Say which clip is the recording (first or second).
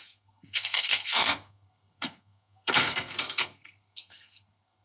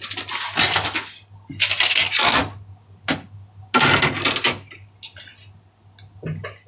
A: second